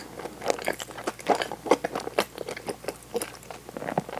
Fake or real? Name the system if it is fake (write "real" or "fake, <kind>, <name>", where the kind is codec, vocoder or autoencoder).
real